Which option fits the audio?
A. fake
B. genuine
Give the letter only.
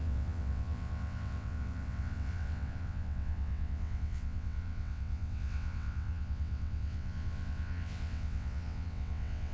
A